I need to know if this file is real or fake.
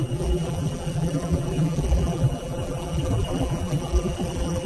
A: fake